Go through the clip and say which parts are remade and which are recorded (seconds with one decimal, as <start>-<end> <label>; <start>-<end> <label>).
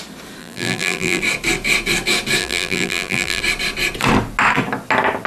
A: 0.0-0.4 recorded; 0.4-1.2 remade; 1.2-2.4 recorded; 2.4-3.4 remade; 3.4-5.3 recorded